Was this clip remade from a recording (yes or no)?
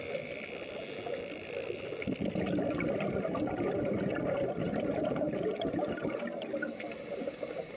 no